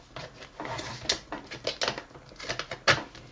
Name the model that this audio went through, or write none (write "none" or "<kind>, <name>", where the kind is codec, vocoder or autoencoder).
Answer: none